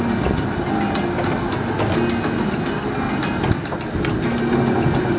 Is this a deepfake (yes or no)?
no